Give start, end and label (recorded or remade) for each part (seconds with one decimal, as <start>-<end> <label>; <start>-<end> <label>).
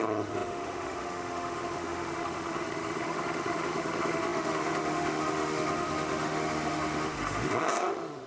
0.0-8.3 remade